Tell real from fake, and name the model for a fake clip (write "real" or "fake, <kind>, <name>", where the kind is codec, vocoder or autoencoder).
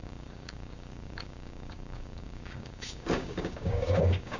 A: fake, codec, DAC